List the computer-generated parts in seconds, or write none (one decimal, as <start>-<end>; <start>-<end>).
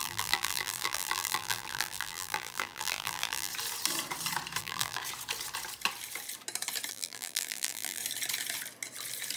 0.0-3.5; 4.6-5.0; 6.9-8.0